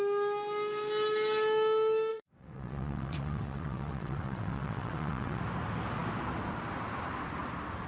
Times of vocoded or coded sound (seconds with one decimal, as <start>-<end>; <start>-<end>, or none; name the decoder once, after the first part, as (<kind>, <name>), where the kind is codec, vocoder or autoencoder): 2.1-5.4 (vocoder, WaveNeXt)